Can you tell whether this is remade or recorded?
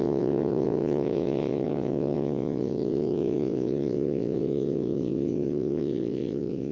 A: remade